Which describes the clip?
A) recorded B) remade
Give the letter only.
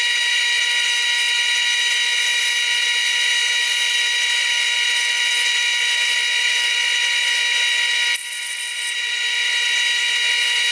A